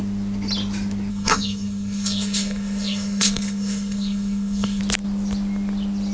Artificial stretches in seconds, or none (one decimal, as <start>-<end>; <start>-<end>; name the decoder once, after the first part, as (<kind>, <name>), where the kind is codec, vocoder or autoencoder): 1.1-4.8 (codec, SNAC)